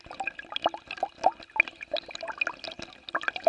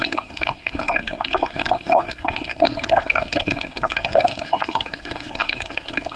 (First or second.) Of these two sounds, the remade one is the second